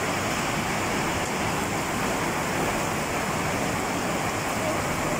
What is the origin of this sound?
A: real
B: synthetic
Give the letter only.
A